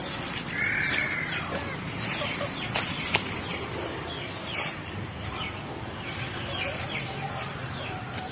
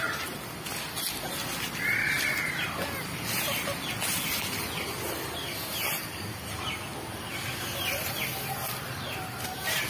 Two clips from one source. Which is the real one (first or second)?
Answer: second